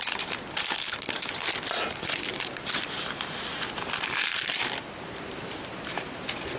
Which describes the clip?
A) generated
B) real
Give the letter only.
B